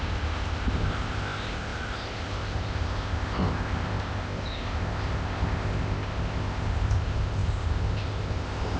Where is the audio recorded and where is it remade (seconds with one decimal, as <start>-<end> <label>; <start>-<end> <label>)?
0.0-8.8 remade

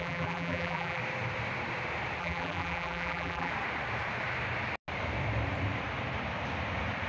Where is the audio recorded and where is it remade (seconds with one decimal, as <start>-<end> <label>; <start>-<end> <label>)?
0.0-1.0 remade; 1.0-2.2 recorded; 2.2-3.5 remade; 3.5-7.1 recorded

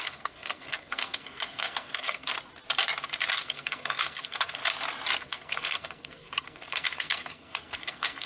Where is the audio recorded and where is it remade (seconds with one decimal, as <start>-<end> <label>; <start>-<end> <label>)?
0.0-2.3 remade; 2.3-3.4 recorded; 3.4-4.6 remade; 4.6-5.2 recorded; 5.2-8.3 remade

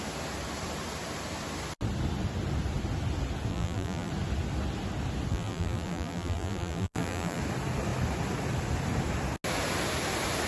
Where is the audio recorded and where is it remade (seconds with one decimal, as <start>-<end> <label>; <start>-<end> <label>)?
0.0-3.5 recorded; 3.5-4.1 remade; 4.1-5.3 recorded; 5.3-7.4 remade; 7.4-10.5 recorded

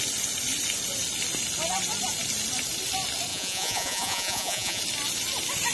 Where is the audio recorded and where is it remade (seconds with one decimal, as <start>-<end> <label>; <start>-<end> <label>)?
0.0-3.3 recorded; 3.3-4.8 remade; 4.8-5.7 recorded